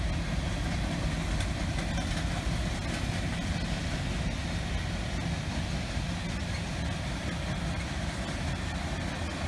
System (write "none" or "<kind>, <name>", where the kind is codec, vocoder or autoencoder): none